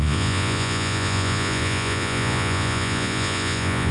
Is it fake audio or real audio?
fake